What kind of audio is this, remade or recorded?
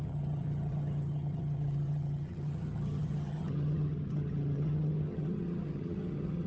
remade